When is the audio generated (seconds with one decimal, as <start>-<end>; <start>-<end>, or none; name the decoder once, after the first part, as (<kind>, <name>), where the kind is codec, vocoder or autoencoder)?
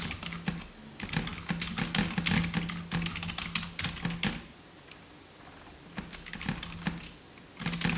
none